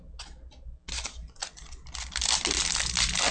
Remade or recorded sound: recorded